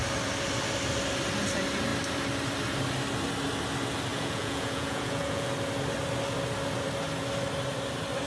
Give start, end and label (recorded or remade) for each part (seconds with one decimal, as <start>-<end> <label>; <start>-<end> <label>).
0.0-4.1 recorded; 4.1-5.5 remade; 5.5-8.3 recorded